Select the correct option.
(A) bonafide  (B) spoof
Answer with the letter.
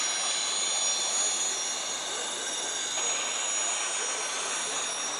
A